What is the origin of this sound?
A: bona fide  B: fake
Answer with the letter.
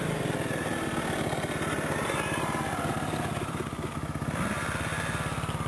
A